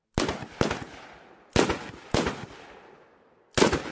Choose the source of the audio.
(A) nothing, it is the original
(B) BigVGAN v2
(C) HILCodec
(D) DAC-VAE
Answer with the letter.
A